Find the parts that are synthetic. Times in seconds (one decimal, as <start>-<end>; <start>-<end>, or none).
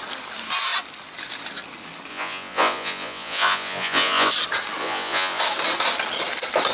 2.1-4.3; 4.8-5.4